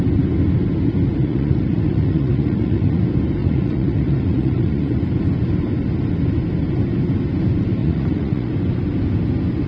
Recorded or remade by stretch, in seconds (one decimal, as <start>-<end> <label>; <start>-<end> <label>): 0.0-1.2 recorded; 1.2-3.0 remade; 3.0-3.4 recorded; 3.4-5.0 remade; 5.0-7.8 recorded; 7.8-8.5 remade; 8.5-9.7 recorded